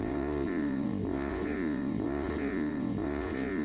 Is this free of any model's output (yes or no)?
no